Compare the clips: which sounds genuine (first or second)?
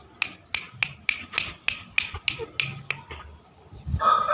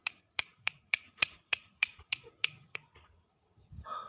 first